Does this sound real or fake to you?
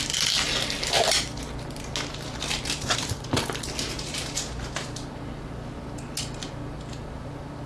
real